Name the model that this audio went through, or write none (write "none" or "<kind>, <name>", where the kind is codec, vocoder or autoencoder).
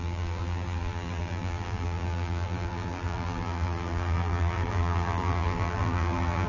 vocoder, BigVGAN v2